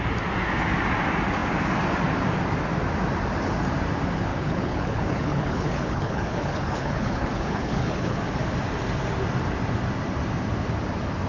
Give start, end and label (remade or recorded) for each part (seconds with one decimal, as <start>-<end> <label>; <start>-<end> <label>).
0.0-4.3 recorded; 4.3-8.2 remade; 8.2-11.3 recorded